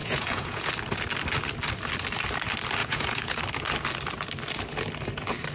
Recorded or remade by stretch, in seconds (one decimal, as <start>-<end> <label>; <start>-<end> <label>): 0.0-0.7 remade; 0.7-2.8 recorded; 2.8-3.4 remade; 3.4-5.5 recorded